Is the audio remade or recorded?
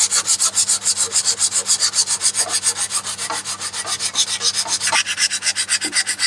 recorded